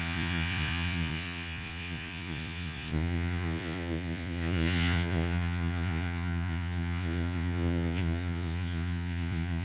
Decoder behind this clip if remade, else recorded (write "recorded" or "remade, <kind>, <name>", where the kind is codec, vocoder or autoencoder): remade, vocoder, Vocos